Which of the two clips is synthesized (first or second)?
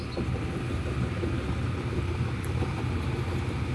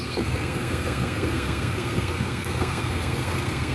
second